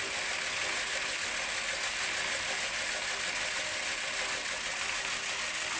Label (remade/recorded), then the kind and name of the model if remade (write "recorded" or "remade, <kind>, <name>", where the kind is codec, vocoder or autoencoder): recorded